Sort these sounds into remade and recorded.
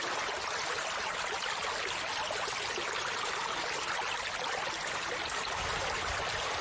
recorded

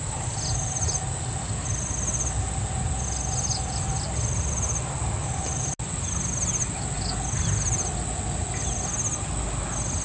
recorded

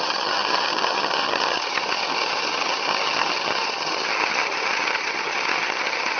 remade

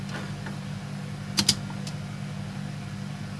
recorded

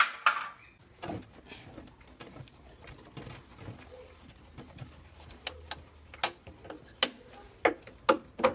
recorded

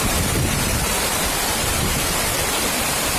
remade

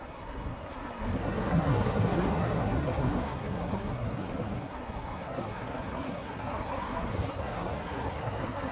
remade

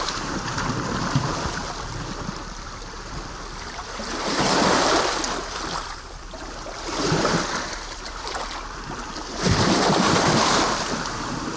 remade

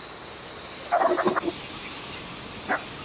recorded